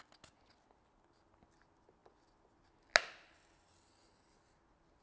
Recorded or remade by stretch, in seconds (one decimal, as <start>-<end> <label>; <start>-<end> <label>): 0.0-5.0 recorded